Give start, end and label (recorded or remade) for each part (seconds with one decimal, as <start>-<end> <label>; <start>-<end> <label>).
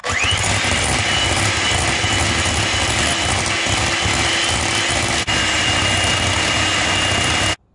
0.0-7.7 recorded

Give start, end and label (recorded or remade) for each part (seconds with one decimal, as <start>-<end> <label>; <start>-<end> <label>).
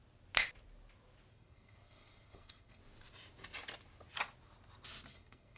0.0-1.3 recorded; 1.3-2.8 remade; 2.8-5.1 recorded; 5.1-5.6 remade